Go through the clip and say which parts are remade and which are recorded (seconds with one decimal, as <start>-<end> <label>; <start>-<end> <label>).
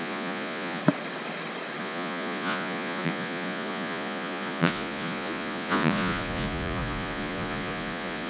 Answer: 0.0-0.8 remade; 0.8-1.8 recorded; 1.8-8.3 remade